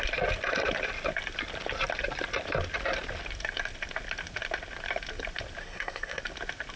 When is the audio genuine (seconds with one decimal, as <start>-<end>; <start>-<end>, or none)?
0.0-5.6; 6.2-6.8